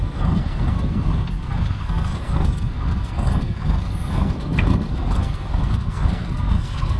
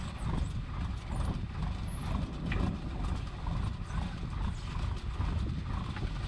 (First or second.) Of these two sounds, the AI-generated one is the first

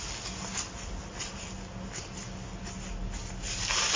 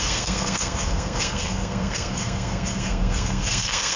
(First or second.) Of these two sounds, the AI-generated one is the second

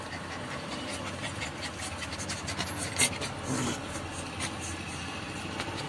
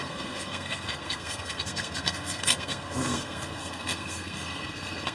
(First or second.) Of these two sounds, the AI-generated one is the second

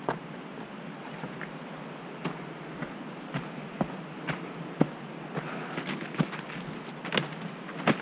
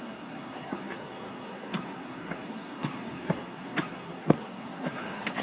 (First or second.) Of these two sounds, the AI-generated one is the second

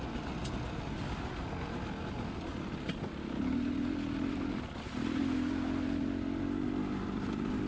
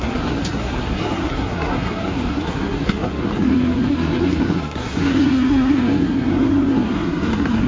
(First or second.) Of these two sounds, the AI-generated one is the second